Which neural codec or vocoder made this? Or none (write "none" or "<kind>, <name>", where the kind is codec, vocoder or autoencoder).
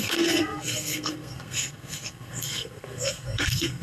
codec, SNAC